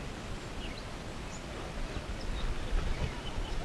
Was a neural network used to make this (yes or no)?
no